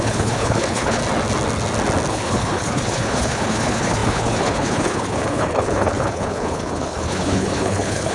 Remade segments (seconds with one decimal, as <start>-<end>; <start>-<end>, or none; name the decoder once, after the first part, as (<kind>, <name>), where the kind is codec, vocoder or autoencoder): 0.0-1.0 (codec, HILCodec); 2.1-8.1